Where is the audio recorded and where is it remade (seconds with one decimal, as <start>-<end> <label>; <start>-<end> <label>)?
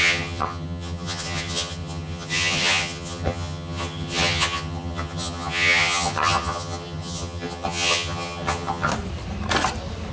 0.0-8.9 remade; 8.9-10.1 recorded